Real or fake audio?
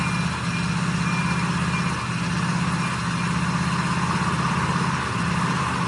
real